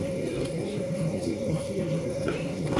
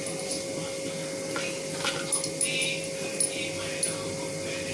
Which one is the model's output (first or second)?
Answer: first